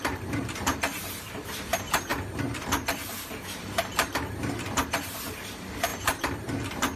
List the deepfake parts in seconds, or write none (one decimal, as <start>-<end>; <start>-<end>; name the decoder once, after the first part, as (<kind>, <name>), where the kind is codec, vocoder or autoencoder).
0.0-7.0 (vocoder, BigVGAN v2)